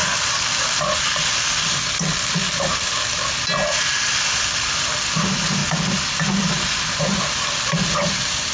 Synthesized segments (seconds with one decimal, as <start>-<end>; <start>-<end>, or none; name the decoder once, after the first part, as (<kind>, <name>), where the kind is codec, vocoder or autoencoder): 0.0-5.1 (vocoder, BigVGAN v2); 5.6-8.5